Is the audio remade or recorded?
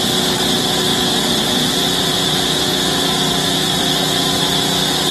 recorded